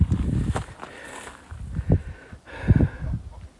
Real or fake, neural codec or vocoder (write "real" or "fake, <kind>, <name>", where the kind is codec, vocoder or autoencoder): real